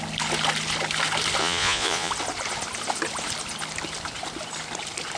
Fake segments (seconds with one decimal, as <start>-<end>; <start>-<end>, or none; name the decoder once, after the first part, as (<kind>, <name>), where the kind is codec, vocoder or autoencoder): 1.4-2.1 (vocoder, Vocos)